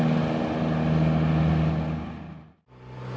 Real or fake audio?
real